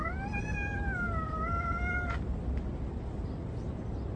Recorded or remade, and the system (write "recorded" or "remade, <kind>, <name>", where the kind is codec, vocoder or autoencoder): recorded